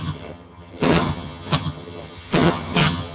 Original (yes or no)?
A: no